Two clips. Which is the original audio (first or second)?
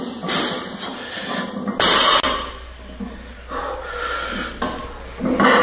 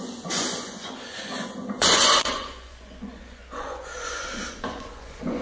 first